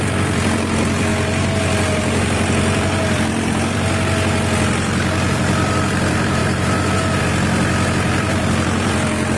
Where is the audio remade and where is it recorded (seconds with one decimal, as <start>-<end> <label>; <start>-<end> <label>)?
0.0-1.1 remade; 1.1-2.2 recorded; 2.2-6.4 remade; 6.4-7.2 recorded; 7.2-9.4 remade